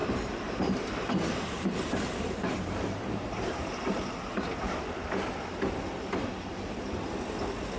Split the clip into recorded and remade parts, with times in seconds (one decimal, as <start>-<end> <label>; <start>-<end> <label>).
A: 0.0-0.9 remade; 0.9-1.3 recorded; 1.3-4.6 remade; 4.6-7.8 recorded